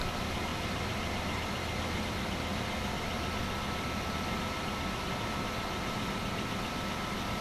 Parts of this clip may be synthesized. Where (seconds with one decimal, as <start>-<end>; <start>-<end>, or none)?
none